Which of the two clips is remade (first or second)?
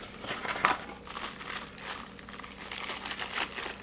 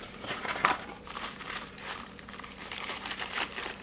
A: second